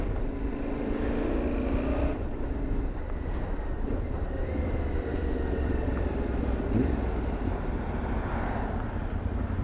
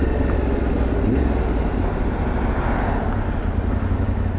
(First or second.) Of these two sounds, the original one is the second